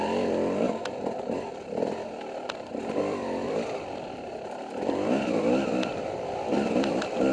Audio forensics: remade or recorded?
recorded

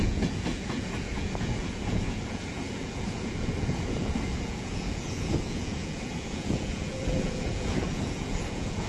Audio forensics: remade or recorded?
remade